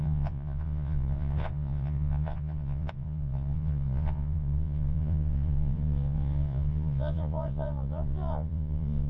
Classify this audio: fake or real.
fake